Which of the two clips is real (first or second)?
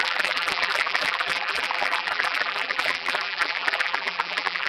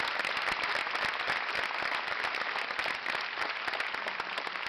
second